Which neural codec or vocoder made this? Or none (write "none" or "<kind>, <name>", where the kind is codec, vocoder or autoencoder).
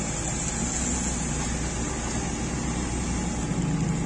none